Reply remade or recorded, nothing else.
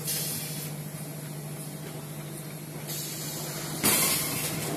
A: recorded